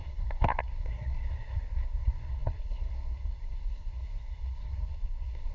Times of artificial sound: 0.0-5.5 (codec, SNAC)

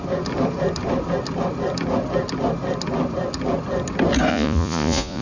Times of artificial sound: 4.3-5.2 (vocoder, Vocos)

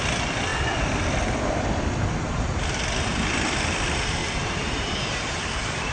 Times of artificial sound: 4.2-4.9 (vocoder, BigVGAN v2)

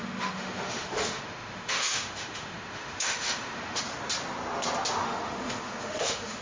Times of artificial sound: 0.0-3.8 (autoencoder, DAC-VAE); 5.0-6.4

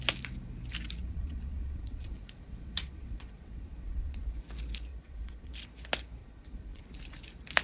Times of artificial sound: 1.0-4.4 (vocoder, Vocos); 4.9-5.5; 6.2-6.8

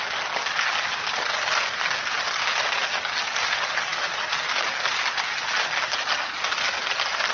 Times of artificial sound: none

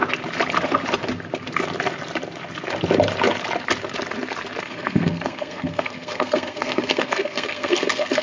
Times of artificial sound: 4.6-8.2 (codec, SNAC)

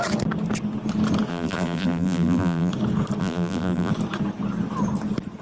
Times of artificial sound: 1.3-2.7 (vocoder, BigVGAN v2); 3.2-3.9